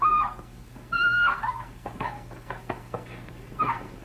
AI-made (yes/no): yes